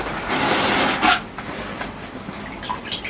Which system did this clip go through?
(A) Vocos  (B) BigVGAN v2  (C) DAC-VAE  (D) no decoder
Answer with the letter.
D